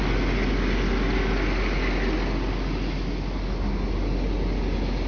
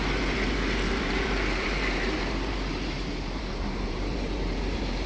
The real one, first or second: first